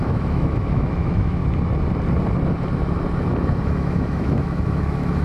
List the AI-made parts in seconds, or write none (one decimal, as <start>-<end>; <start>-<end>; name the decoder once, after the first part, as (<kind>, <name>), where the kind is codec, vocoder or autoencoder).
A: 0.0-1.4 (autoencoder, DAC-VAE); 3.6-5.2